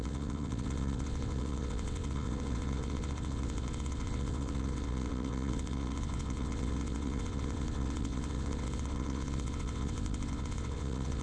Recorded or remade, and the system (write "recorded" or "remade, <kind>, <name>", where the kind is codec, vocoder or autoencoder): remade, vocoder, WaveNeXt